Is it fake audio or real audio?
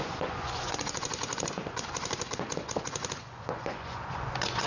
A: fake